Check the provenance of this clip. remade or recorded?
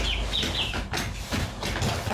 recorded